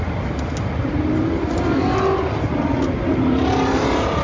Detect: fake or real real